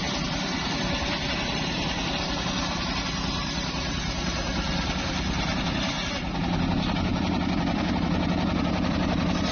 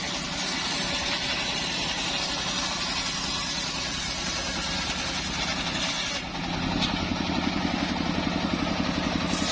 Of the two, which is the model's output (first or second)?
first